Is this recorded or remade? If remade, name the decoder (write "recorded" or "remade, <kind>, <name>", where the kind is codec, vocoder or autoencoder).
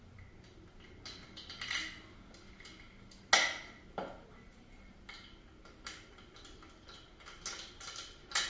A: recorded